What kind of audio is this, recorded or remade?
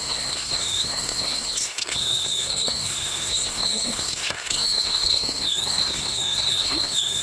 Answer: remade